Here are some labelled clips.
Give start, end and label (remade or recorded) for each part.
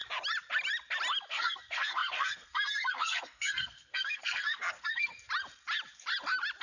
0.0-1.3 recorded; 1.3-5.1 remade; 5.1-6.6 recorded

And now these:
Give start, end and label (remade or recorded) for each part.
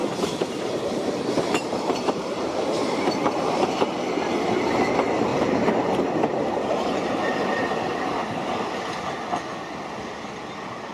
0.0-4.5 remade; 4.5-5.3 recorded; 5.3-6.0 remade; 6.0-10.9 recorded